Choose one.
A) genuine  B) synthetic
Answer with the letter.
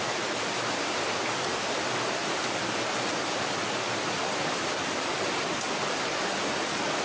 A